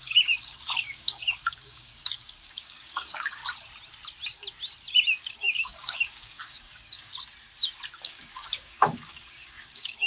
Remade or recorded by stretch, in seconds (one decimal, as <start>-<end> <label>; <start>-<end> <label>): 0.0-3.4 remade; 3.4-5.2 recorded; 5.2-7.1 remade; 7.1-8.0 recorded; 8.0-10.1 remade